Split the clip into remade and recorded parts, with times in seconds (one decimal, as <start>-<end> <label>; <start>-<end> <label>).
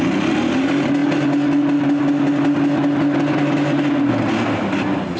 0.0-5.2 recorded